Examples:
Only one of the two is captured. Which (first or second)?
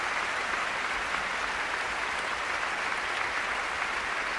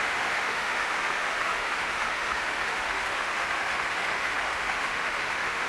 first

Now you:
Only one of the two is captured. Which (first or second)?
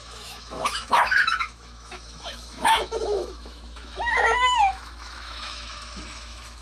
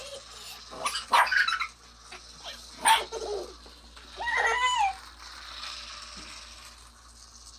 second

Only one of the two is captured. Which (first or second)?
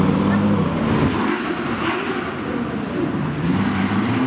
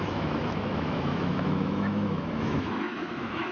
first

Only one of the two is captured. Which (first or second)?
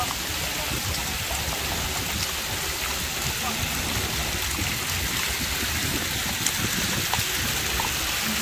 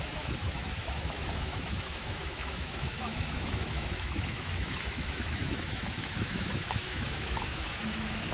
first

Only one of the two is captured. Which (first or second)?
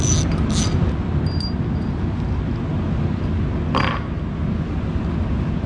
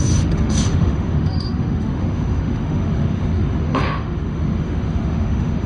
first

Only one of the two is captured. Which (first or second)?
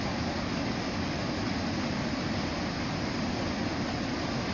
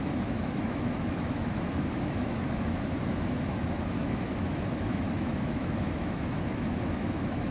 first